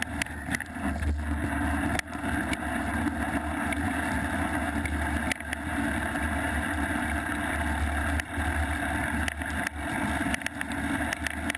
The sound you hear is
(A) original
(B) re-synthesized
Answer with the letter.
A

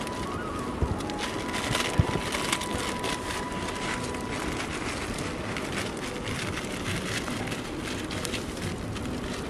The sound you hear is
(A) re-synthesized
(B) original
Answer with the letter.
B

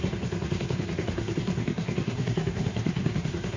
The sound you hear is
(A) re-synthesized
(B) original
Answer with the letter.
A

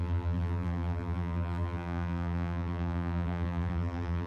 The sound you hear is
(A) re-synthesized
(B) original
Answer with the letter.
A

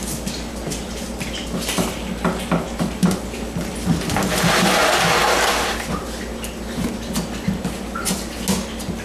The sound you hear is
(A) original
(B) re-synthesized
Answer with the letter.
A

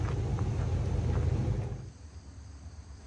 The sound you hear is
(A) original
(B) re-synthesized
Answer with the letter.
A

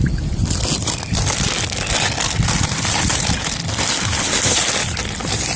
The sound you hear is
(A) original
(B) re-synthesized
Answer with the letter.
A